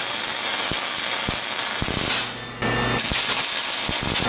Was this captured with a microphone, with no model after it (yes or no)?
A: yes